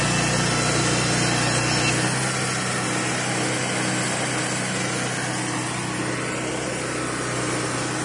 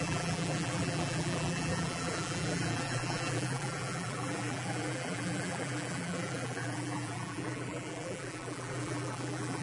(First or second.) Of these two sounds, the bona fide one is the first